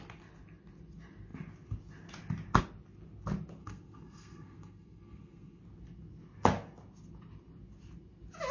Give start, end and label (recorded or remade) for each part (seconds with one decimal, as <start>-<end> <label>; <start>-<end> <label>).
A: 0.0-3.6 recorded; 3.6-5.6 remade; 5.6-8.5 recorded